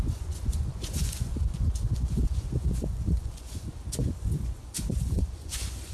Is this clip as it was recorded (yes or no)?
no